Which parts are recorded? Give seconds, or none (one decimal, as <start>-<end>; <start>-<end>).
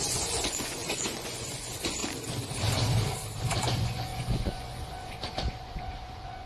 2.0-3.6